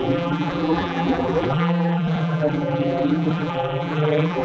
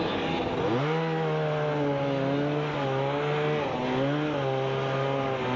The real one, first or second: second